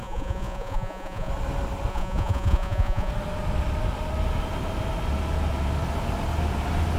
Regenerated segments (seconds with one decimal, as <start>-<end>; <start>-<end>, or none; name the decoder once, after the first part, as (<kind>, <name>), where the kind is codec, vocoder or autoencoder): 0.0-1.3 (vocoder, Vocos); 1.9-3.1